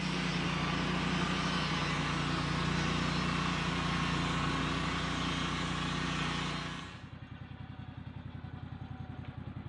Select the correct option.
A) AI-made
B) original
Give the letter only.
B